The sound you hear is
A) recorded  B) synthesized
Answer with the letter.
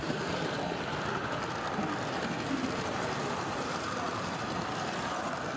A